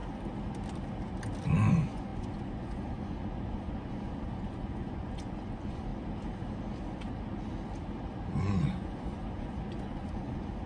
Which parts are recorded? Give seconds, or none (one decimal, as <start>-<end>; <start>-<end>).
0.0-1.7; 5.9-8.4